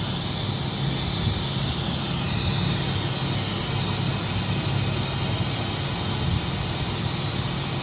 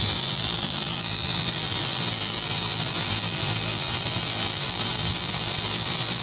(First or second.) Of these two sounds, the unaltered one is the first